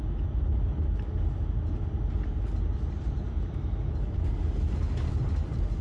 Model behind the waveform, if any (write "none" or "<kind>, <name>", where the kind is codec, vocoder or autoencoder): none